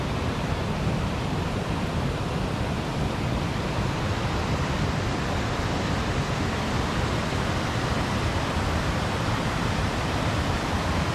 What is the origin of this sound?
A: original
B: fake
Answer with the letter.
B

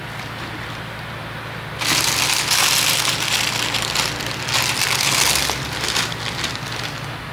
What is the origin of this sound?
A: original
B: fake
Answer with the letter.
A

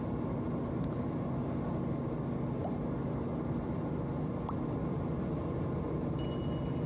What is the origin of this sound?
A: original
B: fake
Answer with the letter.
A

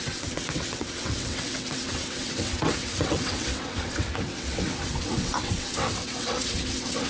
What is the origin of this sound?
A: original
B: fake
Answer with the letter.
B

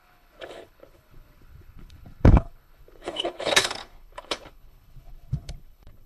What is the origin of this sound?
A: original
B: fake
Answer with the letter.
B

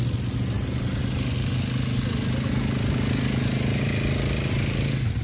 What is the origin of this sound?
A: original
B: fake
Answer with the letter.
A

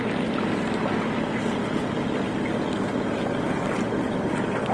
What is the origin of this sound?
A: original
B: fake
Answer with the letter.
A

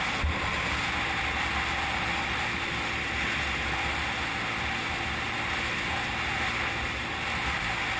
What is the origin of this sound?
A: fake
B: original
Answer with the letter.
B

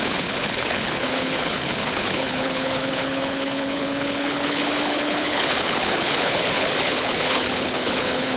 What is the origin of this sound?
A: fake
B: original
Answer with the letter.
A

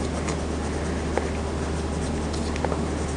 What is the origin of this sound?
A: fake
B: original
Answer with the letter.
B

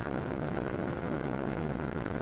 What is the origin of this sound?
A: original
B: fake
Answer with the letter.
B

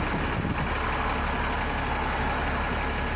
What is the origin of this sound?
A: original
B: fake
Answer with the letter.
A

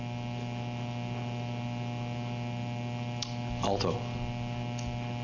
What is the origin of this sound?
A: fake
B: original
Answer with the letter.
B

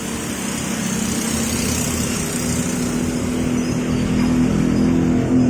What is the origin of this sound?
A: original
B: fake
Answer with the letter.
A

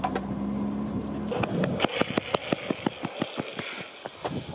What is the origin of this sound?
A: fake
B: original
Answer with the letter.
B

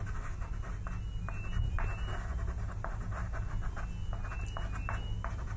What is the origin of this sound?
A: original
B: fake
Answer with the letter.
A